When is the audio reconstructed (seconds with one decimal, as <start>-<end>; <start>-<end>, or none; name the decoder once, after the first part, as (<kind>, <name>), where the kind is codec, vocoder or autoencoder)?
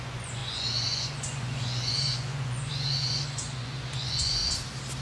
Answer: 0.0-4.4 (vocoder, Vocos)